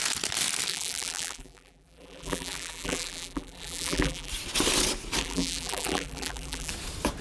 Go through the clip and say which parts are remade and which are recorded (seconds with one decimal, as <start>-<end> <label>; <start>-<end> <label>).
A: 0.0-0.7 recorded; 0.7-4.3 remade; 4.3-5.2 recorded; 5.2-6.7 remade; 6.7-7.2 recorded